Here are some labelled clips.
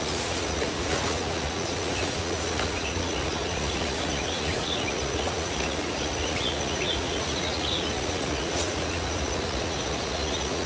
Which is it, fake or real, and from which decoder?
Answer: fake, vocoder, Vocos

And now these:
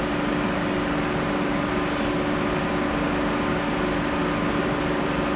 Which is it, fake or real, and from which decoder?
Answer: real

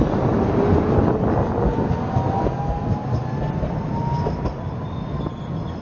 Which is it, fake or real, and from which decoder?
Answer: real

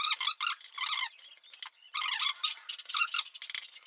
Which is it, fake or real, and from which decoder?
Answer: real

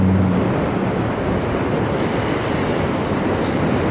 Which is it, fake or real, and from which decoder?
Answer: real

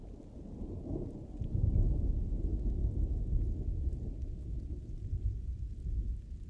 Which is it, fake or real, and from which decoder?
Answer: real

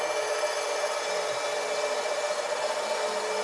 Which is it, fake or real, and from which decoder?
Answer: real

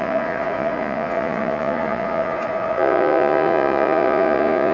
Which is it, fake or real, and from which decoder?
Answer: fake, vocoder, Vocos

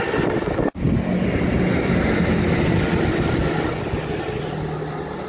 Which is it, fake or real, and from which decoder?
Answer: real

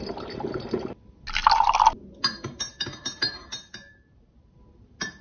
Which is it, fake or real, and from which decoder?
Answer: real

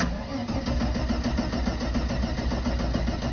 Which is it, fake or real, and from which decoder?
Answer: real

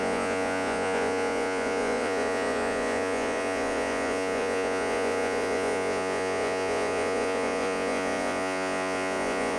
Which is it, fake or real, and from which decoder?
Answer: fake, vocoder, Vocos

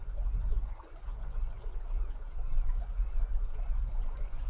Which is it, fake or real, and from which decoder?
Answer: fake, vocoder, Vocos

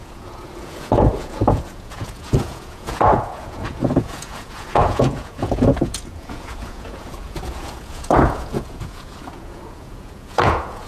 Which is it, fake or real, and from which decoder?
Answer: fake, vocoder, Vocos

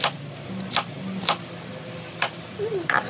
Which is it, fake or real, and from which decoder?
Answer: real